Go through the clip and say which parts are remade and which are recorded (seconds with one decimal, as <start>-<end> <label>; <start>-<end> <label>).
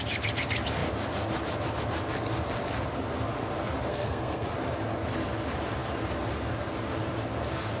0.0-3.9 recorded; 3.9-4.5 remade; 4.5-7.8 recorded